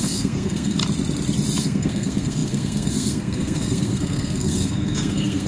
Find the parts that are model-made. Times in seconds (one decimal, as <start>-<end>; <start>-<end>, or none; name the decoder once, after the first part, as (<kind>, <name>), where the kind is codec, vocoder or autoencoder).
0.0-0.8 (codec, SNAC); 1.6-5.5